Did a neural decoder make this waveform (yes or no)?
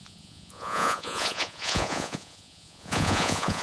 yes